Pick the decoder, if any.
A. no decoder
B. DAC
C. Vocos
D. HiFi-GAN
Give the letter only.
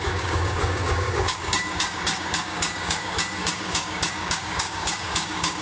B